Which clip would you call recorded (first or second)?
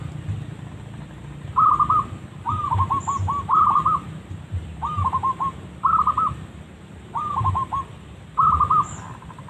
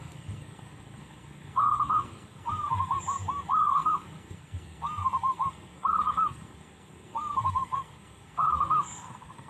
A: first